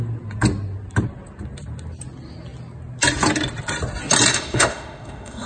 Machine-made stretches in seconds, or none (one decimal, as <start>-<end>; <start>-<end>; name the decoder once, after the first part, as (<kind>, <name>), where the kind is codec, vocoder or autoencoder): 4.3-5.5 (autoencoder, DAC-VAE)